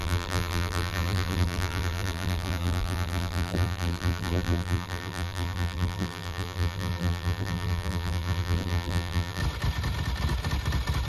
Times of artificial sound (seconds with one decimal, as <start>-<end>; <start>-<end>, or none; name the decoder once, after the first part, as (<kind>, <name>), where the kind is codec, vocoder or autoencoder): 0.0-9.4 (vocoder, BigVGAN v2)

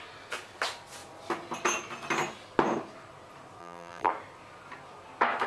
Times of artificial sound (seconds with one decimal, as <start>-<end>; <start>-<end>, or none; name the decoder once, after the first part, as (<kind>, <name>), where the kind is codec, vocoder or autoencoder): 3.6-4.1 (vocoder, BigVGAN v2)

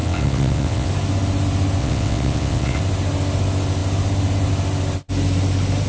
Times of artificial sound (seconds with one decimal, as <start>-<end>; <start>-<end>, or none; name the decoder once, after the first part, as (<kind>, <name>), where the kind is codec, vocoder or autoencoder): 0.0-0.9 (vocoder, WaveNeXt); 1.8-2.8

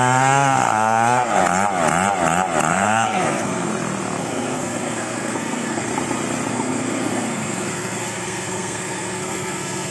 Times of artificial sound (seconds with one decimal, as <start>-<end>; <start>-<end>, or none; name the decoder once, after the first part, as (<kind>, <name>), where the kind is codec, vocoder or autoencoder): 0.0-1.4 (codec, SNAC); 2.7-3.7; 4.2-5.9; 6.5-9.9

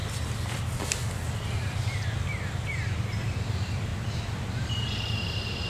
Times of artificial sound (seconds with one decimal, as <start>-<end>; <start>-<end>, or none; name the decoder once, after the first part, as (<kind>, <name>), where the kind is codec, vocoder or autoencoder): 1.5-3.9 (vocoder, BigVGAN v2); 4.5-5.7